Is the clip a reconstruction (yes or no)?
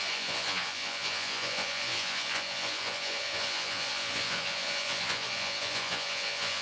yes